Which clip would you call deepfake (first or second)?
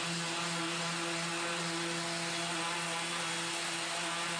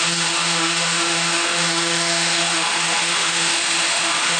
second